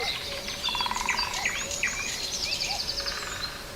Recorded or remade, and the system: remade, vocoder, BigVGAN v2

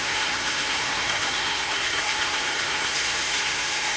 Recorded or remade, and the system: remade, codec, SNAC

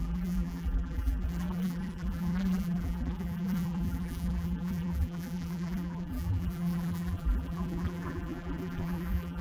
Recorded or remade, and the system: remade, vocoder, BigVGAN v2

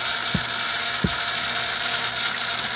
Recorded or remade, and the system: recorded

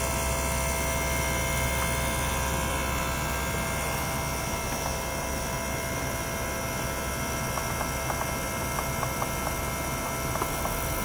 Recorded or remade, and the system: recorded